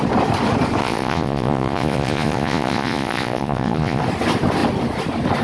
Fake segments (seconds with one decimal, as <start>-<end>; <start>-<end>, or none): 0.8-4.0